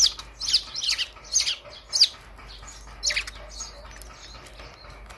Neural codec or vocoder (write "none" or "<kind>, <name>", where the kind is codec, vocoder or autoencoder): none